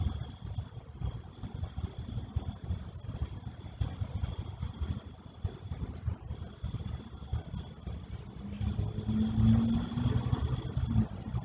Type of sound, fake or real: real